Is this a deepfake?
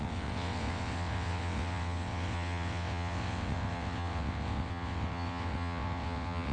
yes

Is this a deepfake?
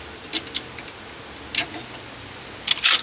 no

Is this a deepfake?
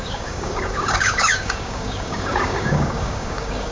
yes